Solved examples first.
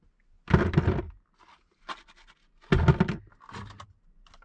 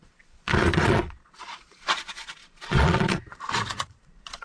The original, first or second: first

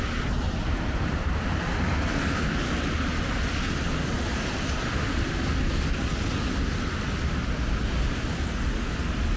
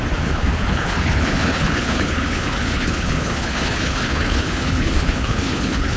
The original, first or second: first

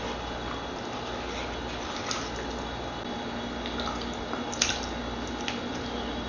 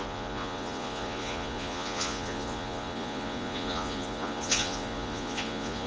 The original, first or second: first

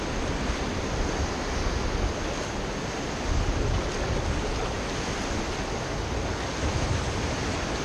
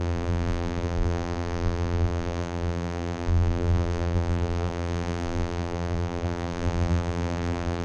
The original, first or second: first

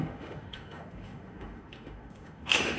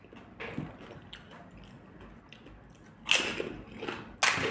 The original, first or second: second